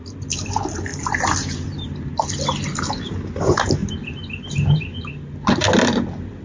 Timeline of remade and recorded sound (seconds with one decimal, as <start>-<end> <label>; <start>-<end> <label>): 0.0-3.8 recorded; 3.8-5.1 remade; 5.1-6.4 recorded